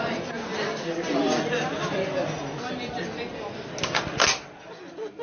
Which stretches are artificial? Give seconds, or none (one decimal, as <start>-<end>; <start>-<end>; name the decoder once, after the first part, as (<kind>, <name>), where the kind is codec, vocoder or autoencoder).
none